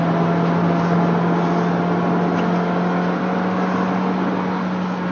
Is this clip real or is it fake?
real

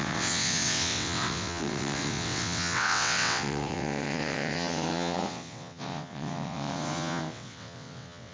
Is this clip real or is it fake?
fake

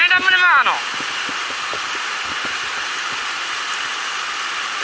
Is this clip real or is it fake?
real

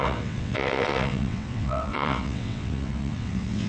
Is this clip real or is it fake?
fake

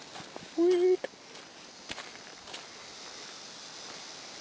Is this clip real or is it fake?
real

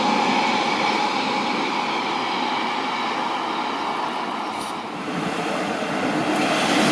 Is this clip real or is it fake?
real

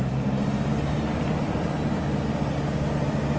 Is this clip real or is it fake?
real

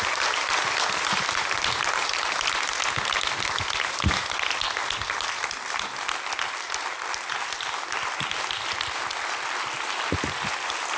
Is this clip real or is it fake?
real